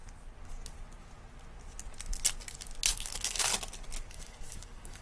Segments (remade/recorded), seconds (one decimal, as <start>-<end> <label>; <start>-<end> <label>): 0.0-2.9 recorded; 2.9-3.5 remade; 3.5-4.1 recorded; 4.1-5.0 remade